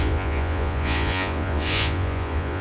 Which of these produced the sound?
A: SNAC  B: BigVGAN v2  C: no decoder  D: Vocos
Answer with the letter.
D